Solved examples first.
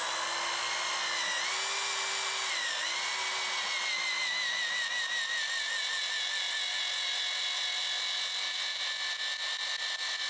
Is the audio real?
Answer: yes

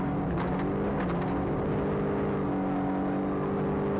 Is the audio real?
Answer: yes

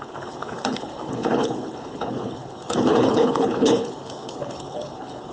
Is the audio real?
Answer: no